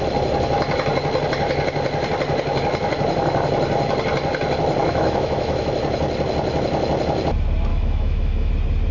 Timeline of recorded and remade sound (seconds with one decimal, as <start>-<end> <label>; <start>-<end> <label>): 0.0-4.8 recorded; 4.8-5.7 remade; 5.7-7.7 recorded; 7.7-8.5 remade; 8.5-8.9 recorded